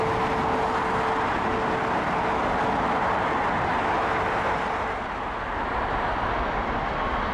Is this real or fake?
real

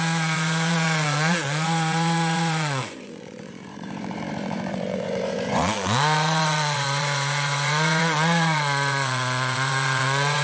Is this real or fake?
fake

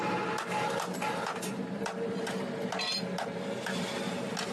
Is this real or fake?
real